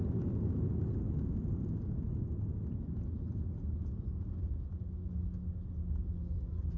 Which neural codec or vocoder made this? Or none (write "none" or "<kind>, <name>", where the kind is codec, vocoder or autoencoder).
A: none